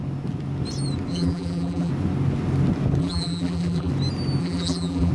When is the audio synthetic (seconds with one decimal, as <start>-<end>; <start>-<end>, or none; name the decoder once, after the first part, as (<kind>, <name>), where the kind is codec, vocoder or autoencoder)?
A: 1.1-1.9 (vocoder, BigVGAN v2); 3.0-3.9; 4.4-5.1